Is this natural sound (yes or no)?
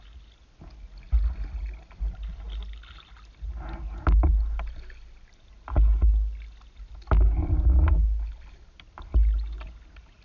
yes